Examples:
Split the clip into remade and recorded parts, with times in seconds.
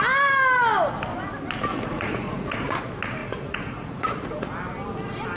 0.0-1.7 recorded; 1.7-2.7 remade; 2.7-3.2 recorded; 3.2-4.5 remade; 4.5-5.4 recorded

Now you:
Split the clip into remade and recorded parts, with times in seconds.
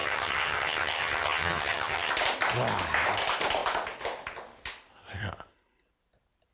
0.0-2.1 remade; 2.1-6.5 recorded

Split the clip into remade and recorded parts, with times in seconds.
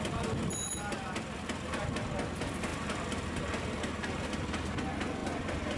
0.0-5.8 recorded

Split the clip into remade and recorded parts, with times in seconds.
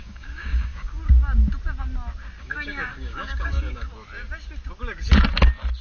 0.0-1.0 remade; 1.0-2.4 recorded; 2.4-3.9 remade; 3.9-5.8 recorded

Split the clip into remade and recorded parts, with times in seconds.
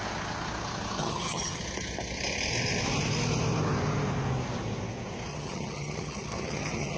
0.0-1.0 recorded; 1.0-1.6 remade; 1.6-5.3 recorded; 5.3-7.0 remade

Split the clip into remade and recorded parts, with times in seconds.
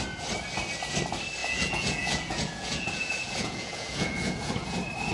0.0-1.4 recorded; 1.4-4.5 remade; 4.5-5.1 recorded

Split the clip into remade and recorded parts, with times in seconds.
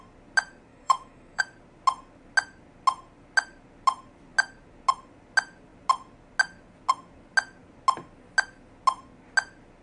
0.0-0.7 recorded; 0.7-1.4 remade; 1.4-9.8 recorded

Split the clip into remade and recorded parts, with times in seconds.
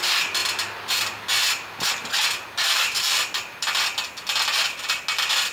0.0-5.5 recorded